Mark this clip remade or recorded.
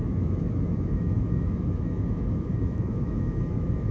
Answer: remade